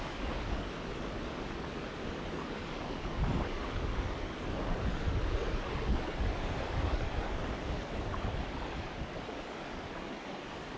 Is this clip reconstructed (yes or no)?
yes